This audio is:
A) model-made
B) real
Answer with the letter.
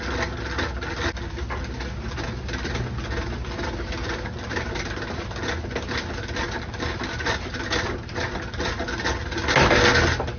B